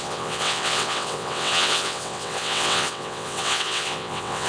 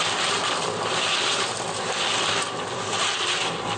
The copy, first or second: first